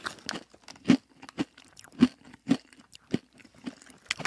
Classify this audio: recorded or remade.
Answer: recorded